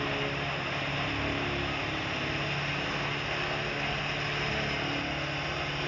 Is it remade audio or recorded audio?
recorded